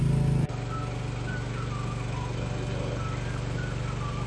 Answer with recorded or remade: recorded